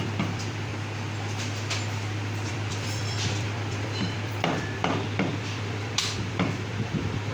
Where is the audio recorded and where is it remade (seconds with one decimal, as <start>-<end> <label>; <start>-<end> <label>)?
0.0-0.7 remade; 0.7-2.5 recorded; 2.5-7.3 remade